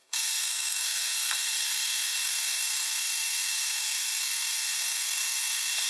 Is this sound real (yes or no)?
no